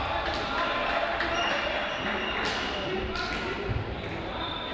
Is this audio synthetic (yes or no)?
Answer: no